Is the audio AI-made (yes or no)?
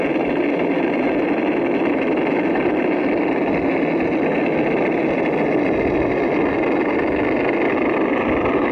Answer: no